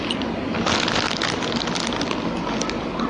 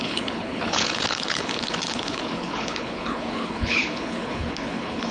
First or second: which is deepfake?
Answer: second